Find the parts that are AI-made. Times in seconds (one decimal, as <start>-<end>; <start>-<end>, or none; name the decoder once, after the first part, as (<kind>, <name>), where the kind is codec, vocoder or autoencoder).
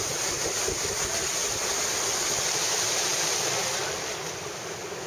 none